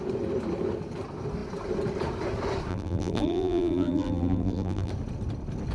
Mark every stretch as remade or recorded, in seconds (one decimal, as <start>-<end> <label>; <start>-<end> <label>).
0.0-2.7 recorded; 2.7-4.9 remade; 4.9-5.7 recorded